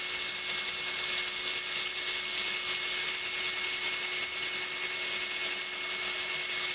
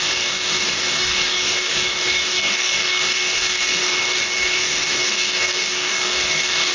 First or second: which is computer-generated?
second